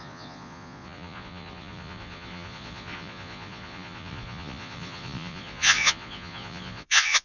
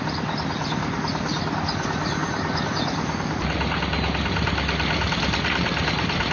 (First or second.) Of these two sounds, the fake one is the first